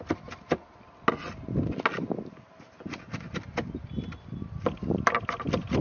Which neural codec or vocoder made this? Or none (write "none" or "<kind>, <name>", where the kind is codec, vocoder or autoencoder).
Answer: none